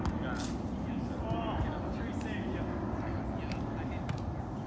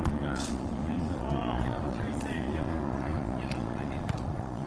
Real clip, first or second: first